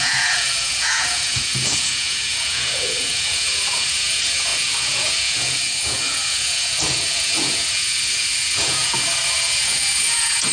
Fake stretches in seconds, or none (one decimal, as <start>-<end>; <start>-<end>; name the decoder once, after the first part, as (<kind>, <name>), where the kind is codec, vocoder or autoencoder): 0.0-10.5 (vocoder, Vocos)